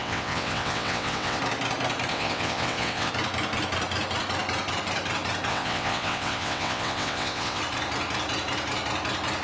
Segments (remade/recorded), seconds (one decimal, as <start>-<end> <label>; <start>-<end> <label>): 0.0-1.4 remade; 1.4-2.1 recorded; 2.1-3.1 remade; 3.1-5.5 recorded; 5.5-7.6 remade; 7.6-9.4 recorded